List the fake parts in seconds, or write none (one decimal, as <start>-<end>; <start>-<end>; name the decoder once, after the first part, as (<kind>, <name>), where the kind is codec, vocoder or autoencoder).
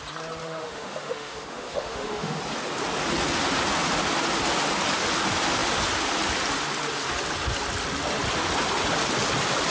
0.4-2.4 (autoencoder, DAC-VAE)